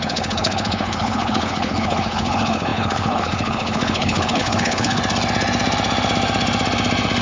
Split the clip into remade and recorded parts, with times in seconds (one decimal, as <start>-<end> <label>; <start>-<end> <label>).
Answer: 0.0-5.0 remade; 5.0-7.2 recorded